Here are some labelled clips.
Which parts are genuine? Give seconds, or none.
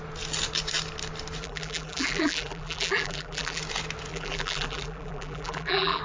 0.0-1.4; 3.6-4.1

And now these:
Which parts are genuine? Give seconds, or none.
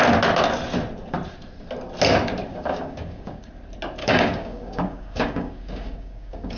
0.0-2.5; 3.5-4.0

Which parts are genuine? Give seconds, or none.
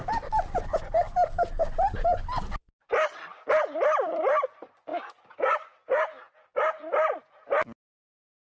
0.0-8.5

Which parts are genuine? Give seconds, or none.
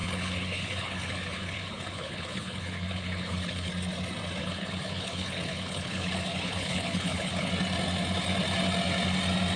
3.7-4.4; 7.5-9.6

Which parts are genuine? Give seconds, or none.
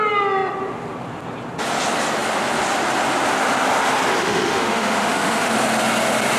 0.0-4.2; 5.5-6.4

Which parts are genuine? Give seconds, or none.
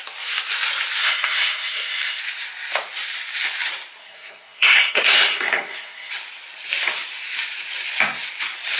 0.0-1.0; 2.2-4.0; 6.1-8.8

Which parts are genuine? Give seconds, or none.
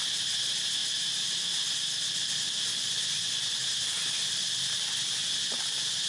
0.0-2.7; 3.5-6.1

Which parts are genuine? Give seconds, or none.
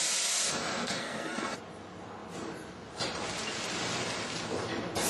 0.0-0.7; 1.6-5.1